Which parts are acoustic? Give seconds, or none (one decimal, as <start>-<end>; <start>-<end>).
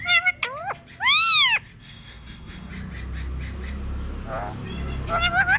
0.0-1.8; 2.7-5.6